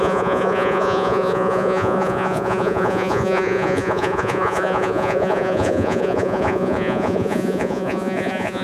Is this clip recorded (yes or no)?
no